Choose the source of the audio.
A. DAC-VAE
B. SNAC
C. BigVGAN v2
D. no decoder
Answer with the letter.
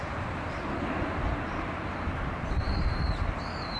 C